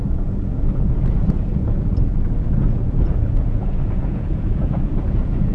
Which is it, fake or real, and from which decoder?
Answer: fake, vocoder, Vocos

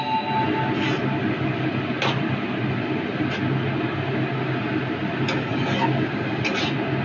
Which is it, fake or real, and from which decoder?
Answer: real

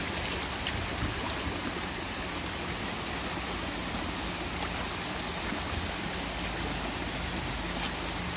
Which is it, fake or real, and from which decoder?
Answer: real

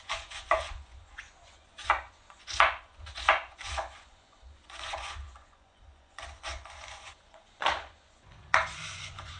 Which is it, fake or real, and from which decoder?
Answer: fake, vocoder, Vocos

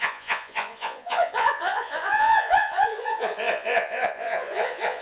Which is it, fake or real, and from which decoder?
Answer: fake, vocoder, Vocos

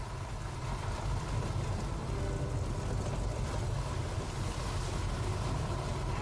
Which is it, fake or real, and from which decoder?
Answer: real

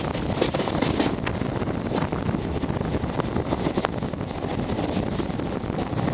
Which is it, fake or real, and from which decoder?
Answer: real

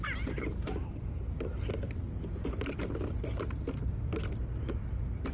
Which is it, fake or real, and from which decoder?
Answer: real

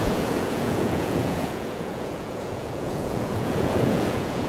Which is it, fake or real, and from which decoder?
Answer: fake, vocoder, Vocos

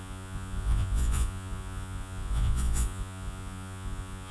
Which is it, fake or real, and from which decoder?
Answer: fake, vocoder, Vocos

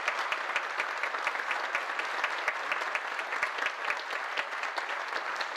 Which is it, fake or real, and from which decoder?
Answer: real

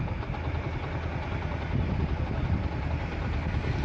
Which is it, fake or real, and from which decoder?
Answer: real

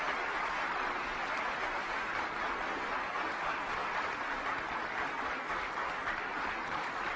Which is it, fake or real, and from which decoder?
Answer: real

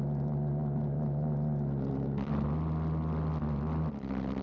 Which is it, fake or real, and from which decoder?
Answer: real